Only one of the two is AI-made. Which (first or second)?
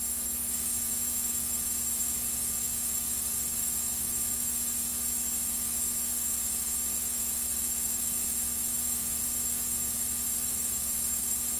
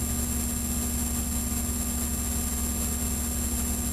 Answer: first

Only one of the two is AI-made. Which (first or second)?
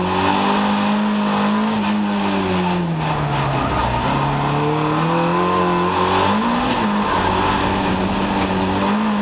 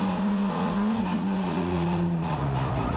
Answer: second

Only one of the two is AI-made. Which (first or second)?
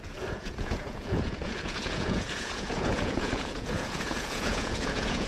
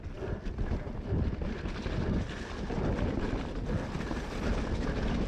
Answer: first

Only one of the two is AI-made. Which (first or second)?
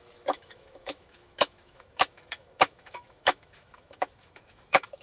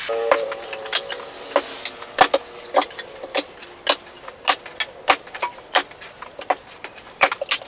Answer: first